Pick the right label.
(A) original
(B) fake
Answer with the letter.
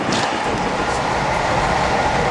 A